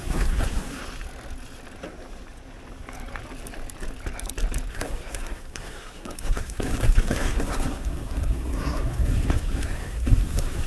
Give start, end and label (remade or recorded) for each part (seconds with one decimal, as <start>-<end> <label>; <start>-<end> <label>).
0.0-0.8 remade; 0.8-4.7 recorded; 4.7-10.7 remade

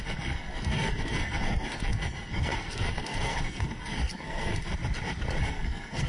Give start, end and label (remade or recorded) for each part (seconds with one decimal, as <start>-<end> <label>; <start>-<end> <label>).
0.0-4.7 remade; 4.7-5.4 recorded; 5.4-6.1 remade

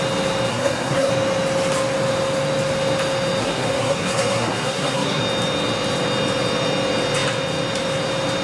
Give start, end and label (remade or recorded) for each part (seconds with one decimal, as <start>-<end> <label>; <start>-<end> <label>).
0.0-0.5 recorded; 0.5-1.1 remade; 1.1-3.4 recorded; 3.4-5.2 remade; 5.2-8.4 recorded

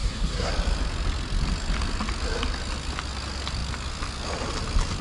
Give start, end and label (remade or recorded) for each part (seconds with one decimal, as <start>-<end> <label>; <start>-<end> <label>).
0.0-0.5 remade; 0.5-5.0 recorded

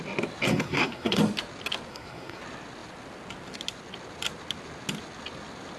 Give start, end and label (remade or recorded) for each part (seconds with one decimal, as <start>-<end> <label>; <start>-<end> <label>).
0.0-0.5 recorded; 0.5-1.2 remade; 1.2-1.9 recorded; 1.9-2.4 remade; 2.4-5.8 recorded